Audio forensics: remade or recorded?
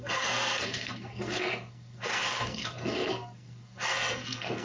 remade